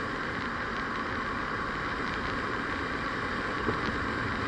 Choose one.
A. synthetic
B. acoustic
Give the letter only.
B